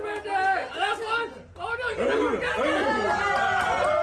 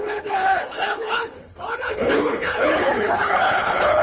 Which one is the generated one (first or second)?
second